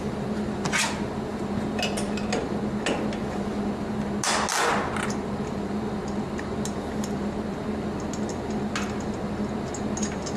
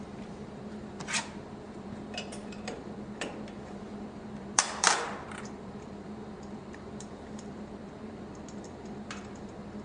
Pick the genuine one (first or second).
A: first